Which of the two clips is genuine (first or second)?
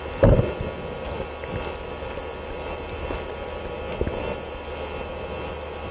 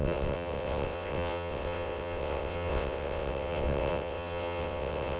first